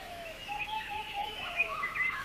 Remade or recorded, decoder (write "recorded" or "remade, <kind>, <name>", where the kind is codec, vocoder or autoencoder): remade, autoencoder, DAC-VAE